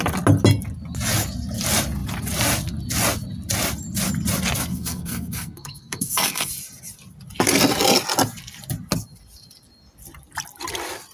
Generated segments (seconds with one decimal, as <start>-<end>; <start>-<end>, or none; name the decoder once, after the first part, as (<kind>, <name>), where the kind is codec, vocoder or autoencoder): 4.7-6.5 (codec, SNAC)